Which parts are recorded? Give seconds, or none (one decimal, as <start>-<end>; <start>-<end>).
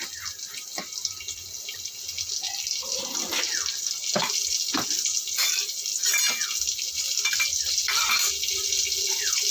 0.0-9.5